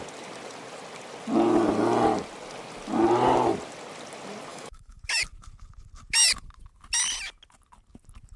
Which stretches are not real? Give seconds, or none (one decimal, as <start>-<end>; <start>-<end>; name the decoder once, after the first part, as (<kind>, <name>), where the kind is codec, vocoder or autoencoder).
4.5-5.0 (autoencoder, DAC-VAE)